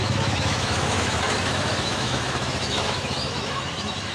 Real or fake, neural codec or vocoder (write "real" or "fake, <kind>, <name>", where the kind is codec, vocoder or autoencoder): fake, autoencoder, DAC-VAE